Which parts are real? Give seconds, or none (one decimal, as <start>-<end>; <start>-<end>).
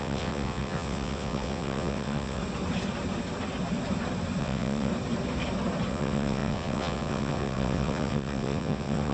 2.4-4.4; 4.9-5.9